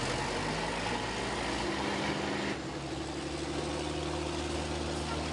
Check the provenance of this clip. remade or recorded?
recorded